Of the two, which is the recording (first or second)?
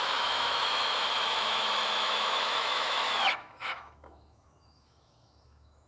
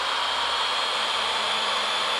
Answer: second